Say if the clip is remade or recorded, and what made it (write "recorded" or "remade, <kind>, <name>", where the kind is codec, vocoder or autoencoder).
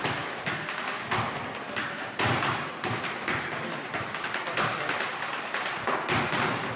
recorded